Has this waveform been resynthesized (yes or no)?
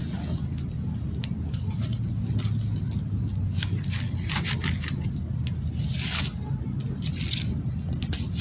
no